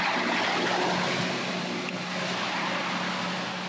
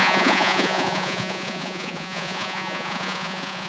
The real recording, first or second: first